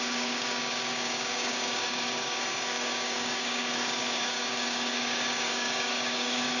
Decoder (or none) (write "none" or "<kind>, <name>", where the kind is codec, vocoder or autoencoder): codec, DAC